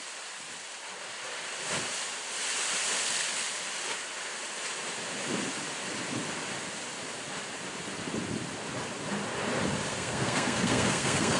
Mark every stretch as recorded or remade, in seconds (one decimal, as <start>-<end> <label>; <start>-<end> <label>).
0.0-9.9 recorded; 9.9-11.4 remade